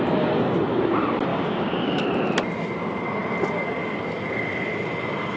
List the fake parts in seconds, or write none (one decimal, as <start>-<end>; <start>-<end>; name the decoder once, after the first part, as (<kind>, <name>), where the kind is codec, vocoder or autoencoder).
1.3-2.0 (codec, DAC)